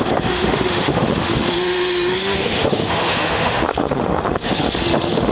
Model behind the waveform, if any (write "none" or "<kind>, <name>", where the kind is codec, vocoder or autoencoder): autoencoder, DAC-VAE